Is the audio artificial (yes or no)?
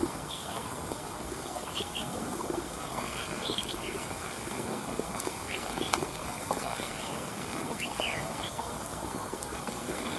yes